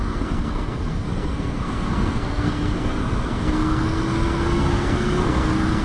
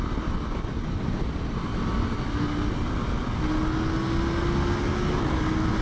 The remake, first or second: first